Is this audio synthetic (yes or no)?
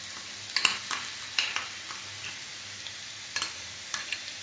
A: no